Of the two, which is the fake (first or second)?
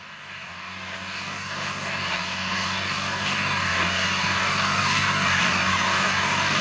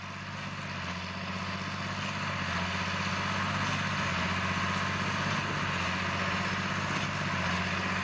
first